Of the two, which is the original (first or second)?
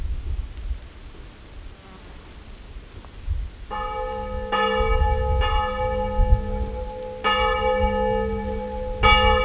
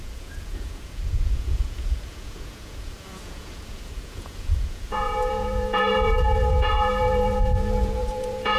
first